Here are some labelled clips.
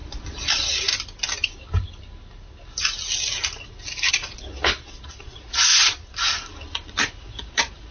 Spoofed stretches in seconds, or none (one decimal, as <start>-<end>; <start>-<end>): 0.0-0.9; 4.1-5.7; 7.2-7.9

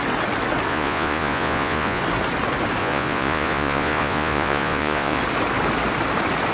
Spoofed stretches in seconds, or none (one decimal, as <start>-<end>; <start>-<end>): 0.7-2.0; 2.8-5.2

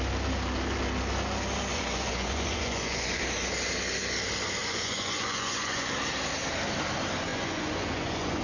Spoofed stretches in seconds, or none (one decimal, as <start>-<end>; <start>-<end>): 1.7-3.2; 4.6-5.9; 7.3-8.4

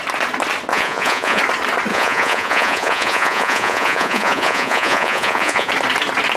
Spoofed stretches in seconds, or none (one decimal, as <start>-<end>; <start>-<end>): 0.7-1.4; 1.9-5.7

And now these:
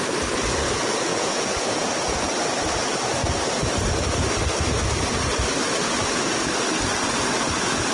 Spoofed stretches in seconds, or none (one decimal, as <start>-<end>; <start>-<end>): 1.1-1.9